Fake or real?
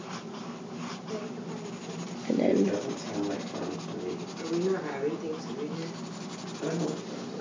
real